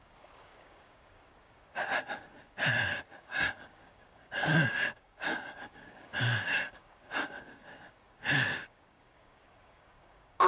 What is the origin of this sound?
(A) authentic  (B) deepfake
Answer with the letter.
B